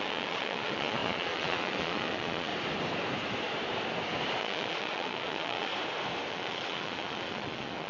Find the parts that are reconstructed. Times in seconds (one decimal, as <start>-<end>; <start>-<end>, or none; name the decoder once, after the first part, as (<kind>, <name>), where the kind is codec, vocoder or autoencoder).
0.0-2.5 (vocoder, Vocos); 4.4-5.7; 6.3-7.9